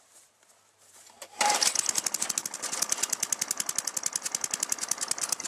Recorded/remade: recorded